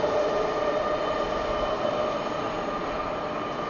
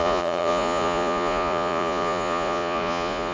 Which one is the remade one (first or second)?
second